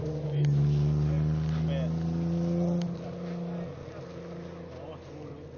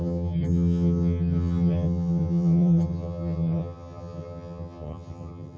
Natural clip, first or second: first